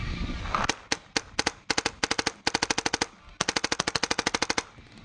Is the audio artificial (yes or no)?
no